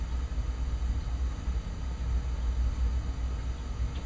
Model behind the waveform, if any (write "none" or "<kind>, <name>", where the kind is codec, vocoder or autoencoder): none